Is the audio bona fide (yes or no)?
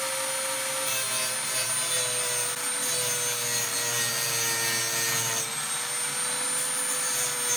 yes